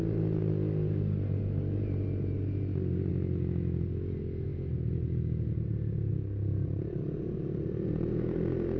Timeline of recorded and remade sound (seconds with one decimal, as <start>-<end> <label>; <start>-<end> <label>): 0.0-8.8 recorded